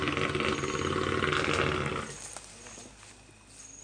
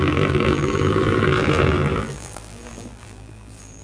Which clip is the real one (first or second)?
first